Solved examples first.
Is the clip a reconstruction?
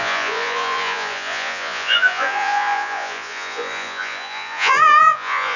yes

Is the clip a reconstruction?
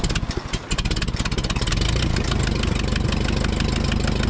no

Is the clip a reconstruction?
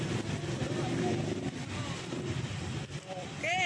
no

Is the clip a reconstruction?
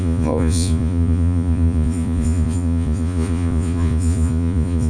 yes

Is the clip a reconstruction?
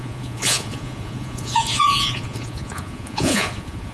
yes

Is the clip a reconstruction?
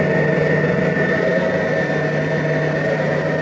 no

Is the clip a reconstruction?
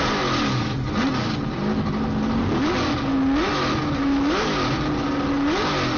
no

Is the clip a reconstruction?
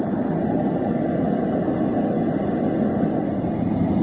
no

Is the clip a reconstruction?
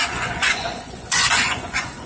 yes